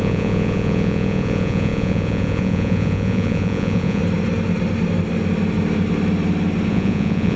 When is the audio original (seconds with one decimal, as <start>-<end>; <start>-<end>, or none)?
4.0-6.7